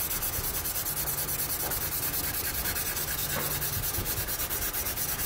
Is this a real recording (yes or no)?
yes